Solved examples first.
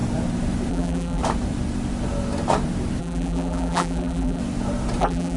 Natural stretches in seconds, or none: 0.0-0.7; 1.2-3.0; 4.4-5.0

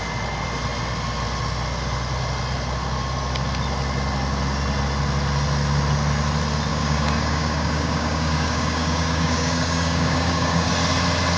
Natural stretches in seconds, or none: 0.0-6.7; 10.7-11.4

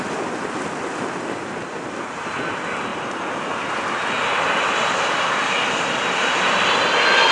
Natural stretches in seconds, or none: 0.0-7.3

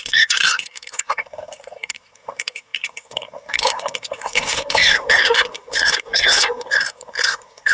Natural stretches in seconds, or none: none

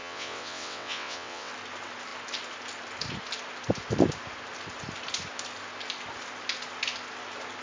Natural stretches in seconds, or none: 1.5-7.6

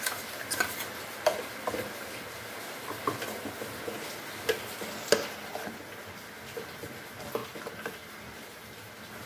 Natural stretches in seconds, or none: 0.0-9.3